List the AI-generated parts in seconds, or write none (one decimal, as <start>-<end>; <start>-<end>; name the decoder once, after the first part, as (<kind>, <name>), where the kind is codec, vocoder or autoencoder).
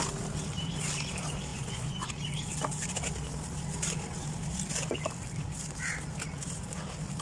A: 1.5-2.1 (vocoder, Vocos)